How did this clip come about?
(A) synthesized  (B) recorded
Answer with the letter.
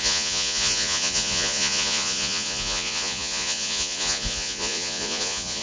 A